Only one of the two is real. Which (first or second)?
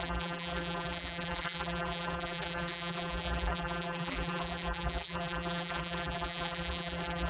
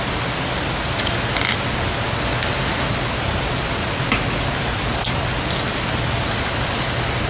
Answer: second